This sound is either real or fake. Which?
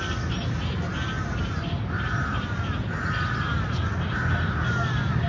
real